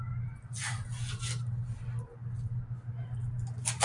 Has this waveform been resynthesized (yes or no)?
no